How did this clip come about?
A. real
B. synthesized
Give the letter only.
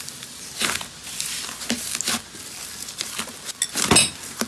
A